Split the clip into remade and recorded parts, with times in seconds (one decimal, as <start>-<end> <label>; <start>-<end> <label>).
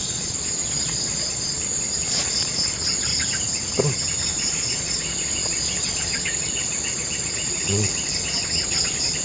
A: 0.0-3.1 remade; 3.1-4.3 recorded; 4.3-9.2 remade